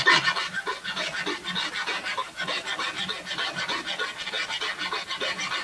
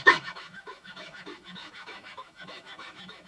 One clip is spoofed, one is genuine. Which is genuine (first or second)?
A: first